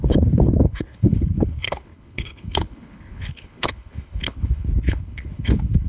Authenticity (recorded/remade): remade